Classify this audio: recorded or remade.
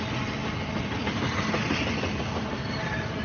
recorded